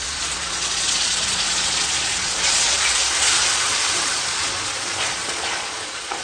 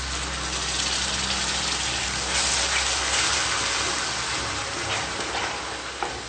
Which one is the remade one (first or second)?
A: first